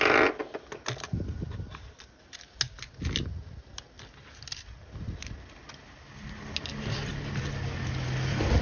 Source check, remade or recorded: recorded